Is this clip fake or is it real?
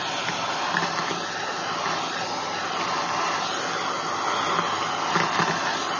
real